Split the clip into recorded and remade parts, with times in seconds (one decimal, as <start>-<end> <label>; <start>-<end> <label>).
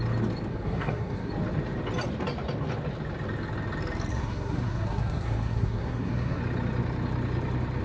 0.0-0.5 recorded; 0.5-1.3 remade; 1.3-4.1 recorded; 4.1-6.4 remade; 6.4-7.8 recorded